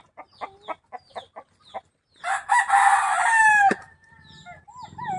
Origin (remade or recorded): recorded